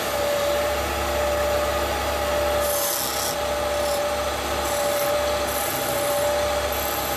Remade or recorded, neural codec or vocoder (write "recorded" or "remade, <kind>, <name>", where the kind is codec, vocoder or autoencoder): recorded